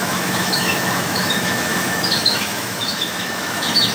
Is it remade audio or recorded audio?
remade